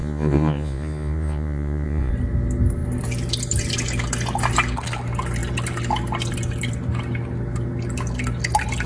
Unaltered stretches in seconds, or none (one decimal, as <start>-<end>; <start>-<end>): 2.1-8.9